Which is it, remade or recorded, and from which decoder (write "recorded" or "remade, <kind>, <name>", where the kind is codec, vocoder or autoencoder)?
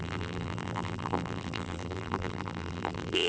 remade, vocoder, BigVGAN v2